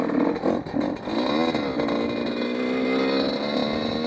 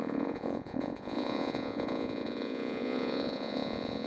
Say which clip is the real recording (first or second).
first